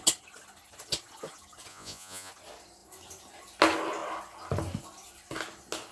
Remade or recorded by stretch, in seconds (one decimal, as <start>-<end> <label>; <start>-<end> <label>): 0.0-1.7 recorded; 1.7-2.3 remade; 2.3-5.9 recorded